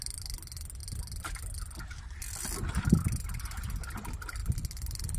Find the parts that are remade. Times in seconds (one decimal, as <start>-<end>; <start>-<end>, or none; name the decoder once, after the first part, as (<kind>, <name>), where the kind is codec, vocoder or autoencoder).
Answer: none